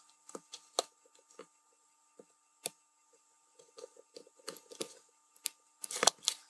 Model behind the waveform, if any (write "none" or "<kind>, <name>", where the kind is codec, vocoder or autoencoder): none